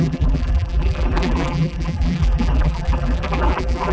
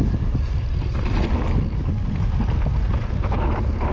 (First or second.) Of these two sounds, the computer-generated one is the first